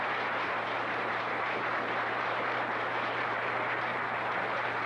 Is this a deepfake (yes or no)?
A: yes